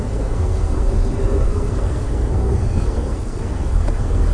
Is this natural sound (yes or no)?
no